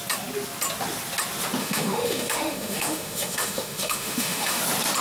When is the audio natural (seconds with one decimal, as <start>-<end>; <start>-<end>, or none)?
0.0-1.6; 4.6-5.0